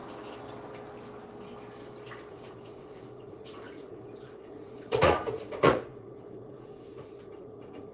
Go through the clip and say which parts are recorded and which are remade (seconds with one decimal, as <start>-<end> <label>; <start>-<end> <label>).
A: 0.0-2.3 recorded; 2.3-7.9 remade